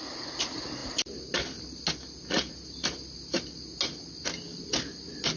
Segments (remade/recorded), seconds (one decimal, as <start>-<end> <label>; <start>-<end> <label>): 0.0-5.4 recorded